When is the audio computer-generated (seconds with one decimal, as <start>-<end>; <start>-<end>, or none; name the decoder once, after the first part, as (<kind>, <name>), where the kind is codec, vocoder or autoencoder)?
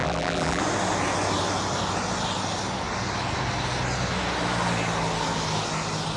0.0-0.6 (vocoder, BigVGAN v2)